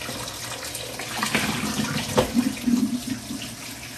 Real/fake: real